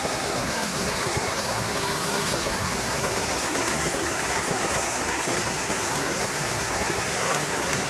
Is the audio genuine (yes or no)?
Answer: no